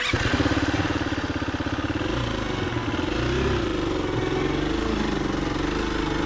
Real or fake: real